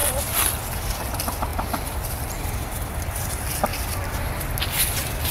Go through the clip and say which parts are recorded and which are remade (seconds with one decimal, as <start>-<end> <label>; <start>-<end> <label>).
0.0-5.3 recorded